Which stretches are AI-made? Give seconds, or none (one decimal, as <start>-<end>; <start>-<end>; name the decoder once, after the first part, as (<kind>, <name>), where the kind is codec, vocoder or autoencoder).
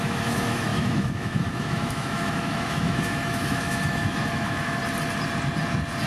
0.0-4.8 (autoencoder, DAC-VAE)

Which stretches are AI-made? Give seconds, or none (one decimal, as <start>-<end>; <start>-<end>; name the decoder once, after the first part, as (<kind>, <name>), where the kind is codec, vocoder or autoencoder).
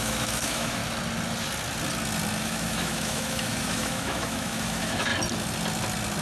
0.0-0.8 (autoencoder, DAC-VAE); 2.4-5.1